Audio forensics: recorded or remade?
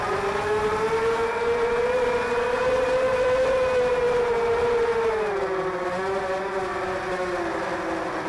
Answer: recorded